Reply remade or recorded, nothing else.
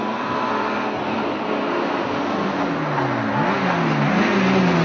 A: recorded